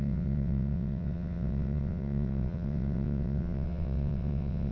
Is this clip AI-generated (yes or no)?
yes